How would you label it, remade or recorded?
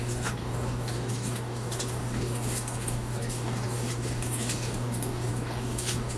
remade